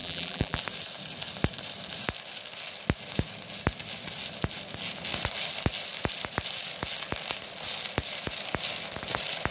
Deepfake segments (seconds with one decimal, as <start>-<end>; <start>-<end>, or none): 0.0-0.6